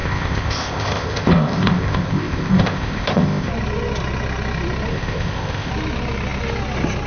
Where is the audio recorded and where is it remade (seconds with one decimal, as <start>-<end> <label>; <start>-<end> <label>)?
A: 0.0-3.5 remade; 3.5-4.9 recorded; 4.9-5.7 remade; 5.7-7.1 recorded